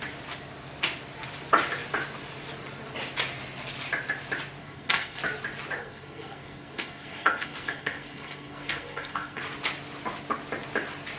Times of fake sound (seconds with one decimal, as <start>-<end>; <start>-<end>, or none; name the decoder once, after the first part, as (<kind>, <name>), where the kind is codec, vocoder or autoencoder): 4.6-5.2 (codec, SNAC); 5.8-9.4